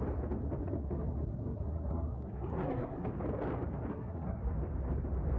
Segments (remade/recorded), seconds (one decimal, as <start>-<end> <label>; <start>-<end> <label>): 0.0-0.6 recorded; 0.6-3.1 remade; 3.1-3.9 recorded; 3.9-4.4 remade; 4.4-5.4 recorded